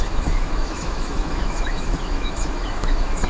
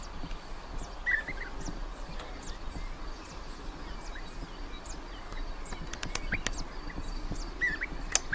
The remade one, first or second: first